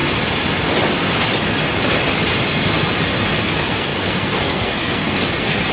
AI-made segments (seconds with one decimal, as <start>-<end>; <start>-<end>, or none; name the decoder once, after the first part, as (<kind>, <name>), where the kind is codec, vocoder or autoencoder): 3.4-5.7 (codec, SNAC)